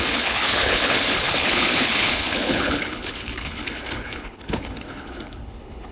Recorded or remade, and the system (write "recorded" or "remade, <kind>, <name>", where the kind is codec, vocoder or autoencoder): remade, codec, HILCodec